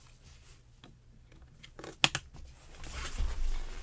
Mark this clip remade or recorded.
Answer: recorded